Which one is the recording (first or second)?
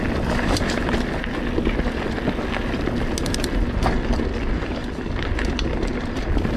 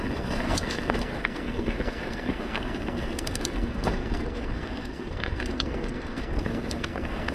first